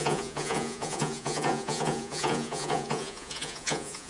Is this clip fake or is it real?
fake